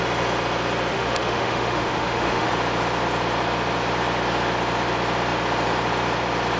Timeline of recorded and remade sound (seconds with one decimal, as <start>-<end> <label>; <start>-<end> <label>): 0.0-0.9 recorded; 0.9-2.5 remade; 2.5-6.6 recorded